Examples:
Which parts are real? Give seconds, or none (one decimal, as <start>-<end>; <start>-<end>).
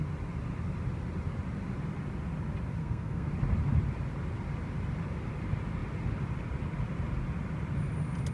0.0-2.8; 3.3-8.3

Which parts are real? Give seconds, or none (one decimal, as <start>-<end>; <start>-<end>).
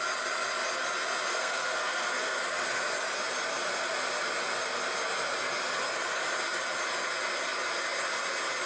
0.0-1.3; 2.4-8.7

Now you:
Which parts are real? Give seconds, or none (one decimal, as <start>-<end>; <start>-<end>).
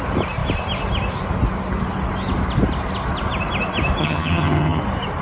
0.0-4.0; 4.8-5.2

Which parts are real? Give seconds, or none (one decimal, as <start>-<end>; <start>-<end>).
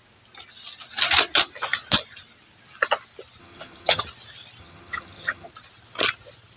0.0-3.4; 4.0-4.6; 5.5-6.6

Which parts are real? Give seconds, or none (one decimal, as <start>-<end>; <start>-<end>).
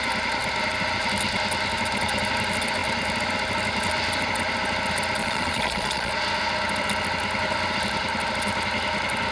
0.0-5.2; 6.1-9.3